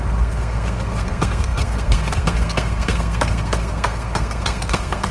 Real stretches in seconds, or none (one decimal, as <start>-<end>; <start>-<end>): none